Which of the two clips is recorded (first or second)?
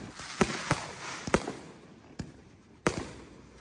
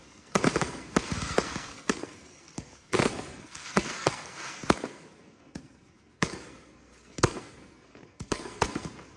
first